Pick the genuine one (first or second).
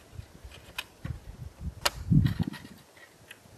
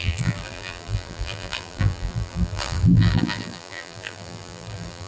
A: first